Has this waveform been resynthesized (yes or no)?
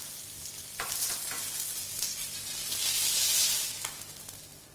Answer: no